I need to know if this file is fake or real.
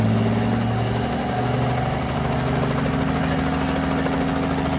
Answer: real